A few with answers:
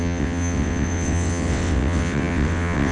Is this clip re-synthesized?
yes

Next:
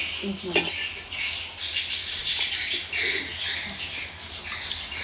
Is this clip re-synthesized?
no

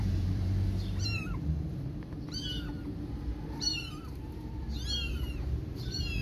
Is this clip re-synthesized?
yes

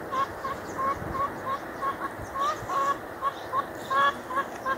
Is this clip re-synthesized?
no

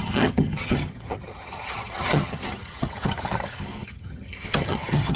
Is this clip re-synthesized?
yes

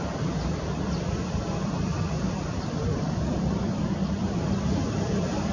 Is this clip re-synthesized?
yes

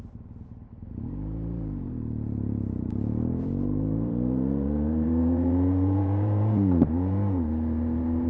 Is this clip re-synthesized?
yes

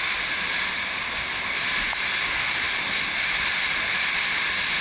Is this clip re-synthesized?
no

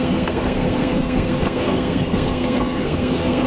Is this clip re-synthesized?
yes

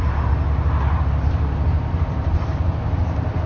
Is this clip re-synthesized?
no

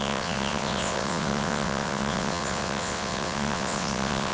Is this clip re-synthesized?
yes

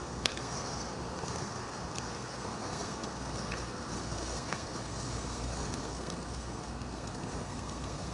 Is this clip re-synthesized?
yes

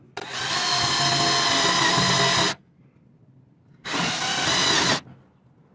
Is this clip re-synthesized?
no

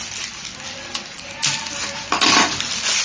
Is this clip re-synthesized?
no